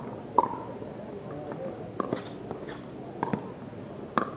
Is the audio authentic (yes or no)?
yes